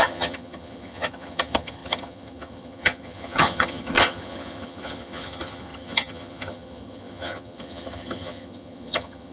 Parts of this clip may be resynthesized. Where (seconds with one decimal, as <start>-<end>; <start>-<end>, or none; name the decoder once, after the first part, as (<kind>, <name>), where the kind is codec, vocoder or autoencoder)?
0.0-9.3 (vocoder, HiFi-GAN)